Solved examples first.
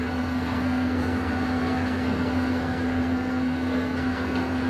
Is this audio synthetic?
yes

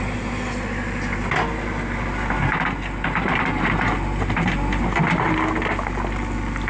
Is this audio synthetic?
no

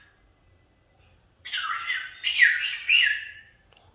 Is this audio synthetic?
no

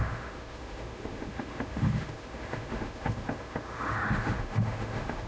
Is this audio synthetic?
yes